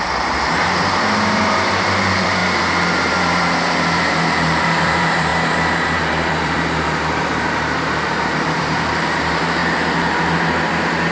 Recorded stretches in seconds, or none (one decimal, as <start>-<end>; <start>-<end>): 9.6-11.1